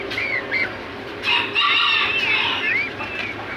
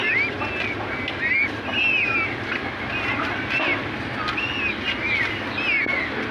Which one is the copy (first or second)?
first